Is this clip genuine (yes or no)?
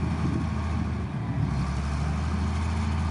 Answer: yes